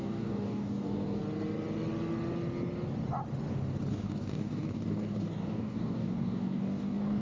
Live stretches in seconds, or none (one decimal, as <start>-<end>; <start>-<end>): 1.2-3.9